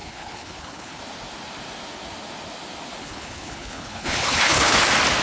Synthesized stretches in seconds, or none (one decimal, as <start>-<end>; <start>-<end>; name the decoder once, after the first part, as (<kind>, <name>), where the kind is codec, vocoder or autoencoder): 0.0-1.0 (codec, HILCodec); 3.0-4.8